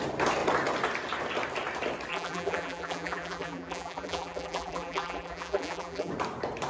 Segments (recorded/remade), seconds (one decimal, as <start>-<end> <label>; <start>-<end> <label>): 0.0-2.1 recorded; 2.1-6.1 remade; 6.1-6.7 recorded